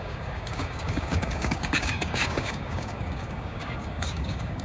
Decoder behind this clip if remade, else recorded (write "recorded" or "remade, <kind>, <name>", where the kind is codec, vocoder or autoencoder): remade, codec, DAC